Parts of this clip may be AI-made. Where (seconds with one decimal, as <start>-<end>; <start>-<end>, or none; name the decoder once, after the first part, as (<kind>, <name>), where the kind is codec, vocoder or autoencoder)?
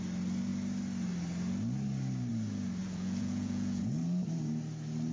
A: 2.8-3.9 (vocoder, Vocos)